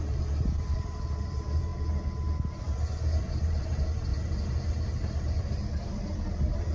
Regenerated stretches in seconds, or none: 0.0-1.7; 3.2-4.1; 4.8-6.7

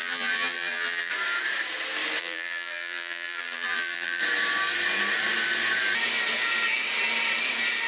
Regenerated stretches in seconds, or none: 0.0-1.1; 2.2-4.2

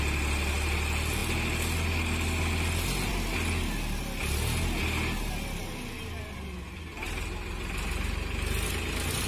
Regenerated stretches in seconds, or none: none

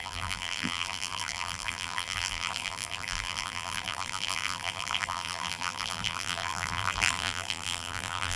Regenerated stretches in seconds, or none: 0.0-8.4

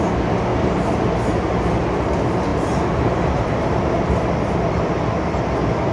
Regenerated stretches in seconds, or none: 0.5-1.1; 2.5-4.0

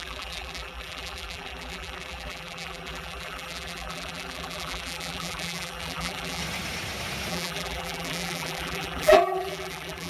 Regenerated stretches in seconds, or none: 0.0-6.4; 7.3-10.1